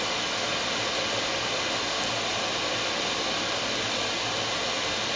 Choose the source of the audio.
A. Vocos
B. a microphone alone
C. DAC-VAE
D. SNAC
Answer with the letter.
B